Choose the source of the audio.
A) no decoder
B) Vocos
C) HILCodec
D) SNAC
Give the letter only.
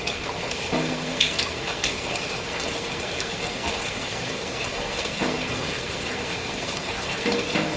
D